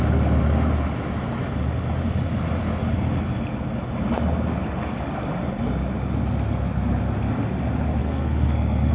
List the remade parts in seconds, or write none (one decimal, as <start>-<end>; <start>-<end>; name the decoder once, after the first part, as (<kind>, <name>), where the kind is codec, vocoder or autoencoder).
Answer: 8.0-8.9 (codec, SNAC)